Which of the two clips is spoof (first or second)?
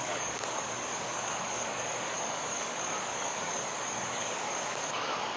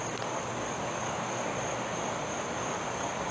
first